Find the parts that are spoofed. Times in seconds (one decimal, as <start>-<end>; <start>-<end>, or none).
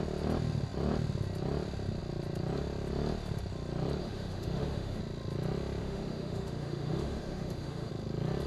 4.0-5.0; 5.8-7.9